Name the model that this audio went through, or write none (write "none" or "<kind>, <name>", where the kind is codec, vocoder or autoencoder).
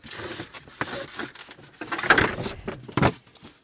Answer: none